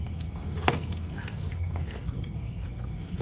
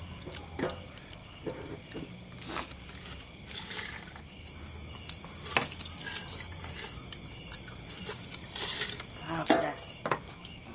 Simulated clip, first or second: first